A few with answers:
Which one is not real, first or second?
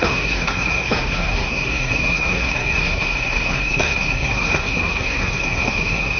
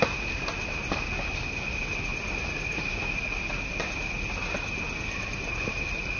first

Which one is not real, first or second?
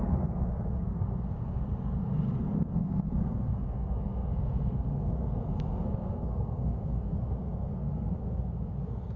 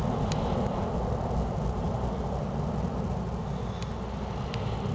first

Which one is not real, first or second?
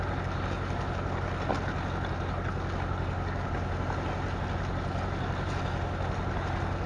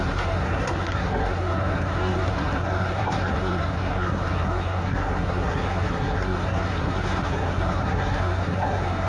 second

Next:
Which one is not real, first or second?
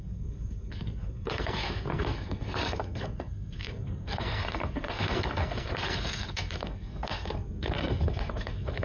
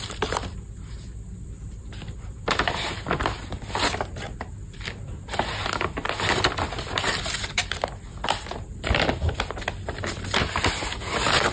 first